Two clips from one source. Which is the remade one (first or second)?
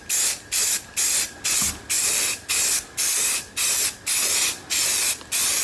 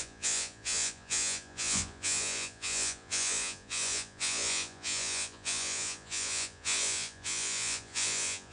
second